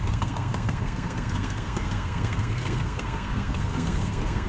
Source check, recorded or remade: remade